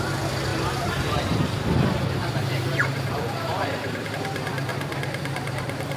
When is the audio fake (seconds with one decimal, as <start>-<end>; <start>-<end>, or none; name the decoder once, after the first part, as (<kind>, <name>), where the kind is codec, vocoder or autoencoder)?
0.5-4.1 (vocoder, BigVGAN v2); 4.7-6.0